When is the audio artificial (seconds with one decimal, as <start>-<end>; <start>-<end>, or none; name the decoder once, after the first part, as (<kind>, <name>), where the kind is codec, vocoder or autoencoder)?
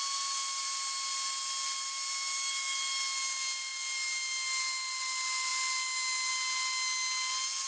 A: none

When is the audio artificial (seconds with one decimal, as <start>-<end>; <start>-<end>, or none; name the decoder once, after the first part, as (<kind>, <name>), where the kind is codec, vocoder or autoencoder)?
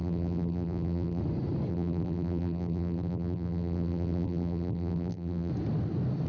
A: 0.0-1.2 (vocoder, BigVGAN v2); 1.7-5.5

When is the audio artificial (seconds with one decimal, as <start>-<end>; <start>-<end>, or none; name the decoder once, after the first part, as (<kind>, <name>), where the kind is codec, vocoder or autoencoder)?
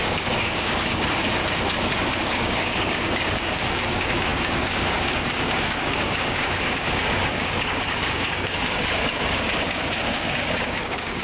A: 0.0-1.4 (codec, DAC); 2.2-11.2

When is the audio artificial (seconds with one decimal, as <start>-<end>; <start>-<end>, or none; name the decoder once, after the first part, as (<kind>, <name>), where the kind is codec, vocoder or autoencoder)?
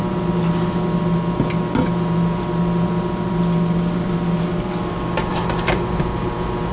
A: 5.3-6.7 (vocoder, BigVGAN v2)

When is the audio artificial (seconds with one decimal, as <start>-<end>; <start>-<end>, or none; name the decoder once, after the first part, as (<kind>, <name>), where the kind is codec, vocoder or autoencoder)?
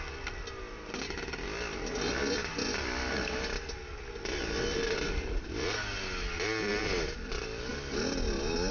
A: 6.7-7.3 (vocoder, BigVGAN v2)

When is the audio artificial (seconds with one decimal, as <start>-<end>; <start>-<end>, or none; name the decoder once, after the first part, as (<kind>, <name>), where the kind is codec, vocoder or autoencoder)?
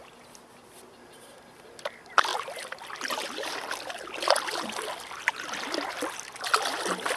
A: none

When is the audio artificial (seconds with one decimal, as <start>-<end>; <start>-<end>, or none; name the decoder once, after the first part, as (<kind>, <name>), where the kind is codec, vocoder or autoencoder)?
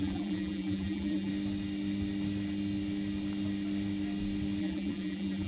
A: 0.0-1.3 (vocoder, BigVGAN v2); 4.6-5.5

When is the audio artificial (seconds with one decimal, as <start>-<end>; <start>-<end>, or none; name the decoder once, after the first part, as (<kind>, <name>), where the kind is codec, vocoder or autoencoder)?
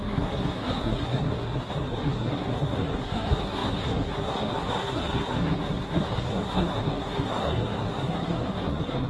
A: 0.0-9.1 (codec, SNAC)